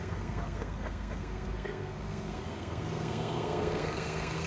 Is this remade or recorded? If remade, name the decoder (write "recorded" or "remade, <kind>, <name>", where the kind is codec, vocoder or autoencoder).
remade, codec, SNAC